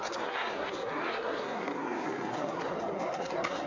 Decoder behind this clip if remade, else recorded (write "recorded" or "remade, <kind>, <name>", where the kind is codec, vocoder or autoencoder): remade, codec, SNAC